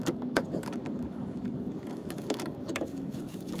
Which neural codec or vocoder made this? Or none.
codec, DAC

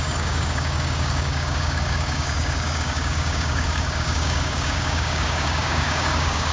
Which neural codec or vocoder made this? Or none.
codec, DAC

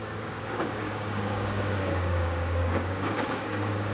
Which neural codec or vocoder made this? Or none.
codec, DAC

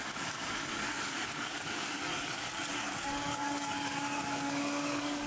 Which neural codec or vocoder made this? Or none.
codec, DAC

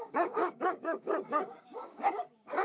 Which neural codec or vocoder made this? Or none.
codec, DAC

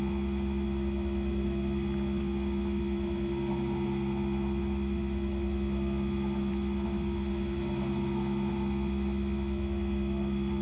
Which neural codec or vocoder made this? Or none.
none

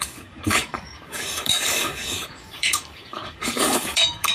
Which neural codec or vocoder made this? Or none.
codec, DAC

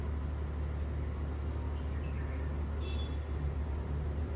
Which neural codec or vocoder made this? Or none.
none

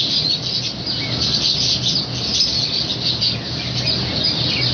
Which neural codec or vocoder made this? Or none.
none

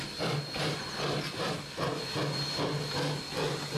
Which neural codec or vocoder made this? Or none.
none